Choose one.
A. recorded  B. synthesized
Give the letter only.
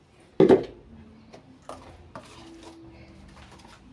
A